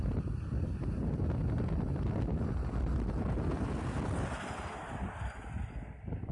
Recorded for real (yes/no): yes